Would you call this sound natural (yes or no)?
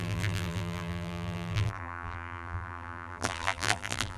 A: no